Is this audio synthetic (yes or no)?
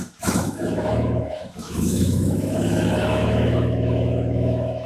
yes